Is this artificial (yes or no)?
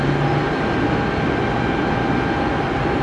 no